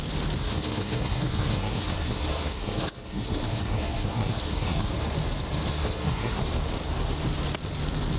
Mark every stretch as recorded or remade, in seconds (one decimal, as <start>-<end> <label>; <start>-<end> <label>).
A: 0.0-0.4 recorded; 0.4-4.9 remade; 4.9-5.7 recorded; 5.7-6.4 remade; 6.4-8.2 recorded